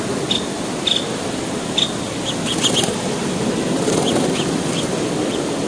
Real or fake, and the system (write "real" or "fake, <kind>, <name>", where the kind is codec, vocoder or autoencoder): real